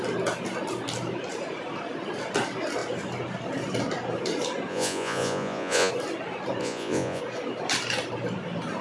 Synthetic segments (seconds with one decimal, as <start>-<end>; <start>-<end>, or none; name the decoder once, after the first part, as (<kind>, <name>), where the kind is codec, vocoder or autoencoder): 4.7-5.9 (vocoder, Vocos); 6.6-7.2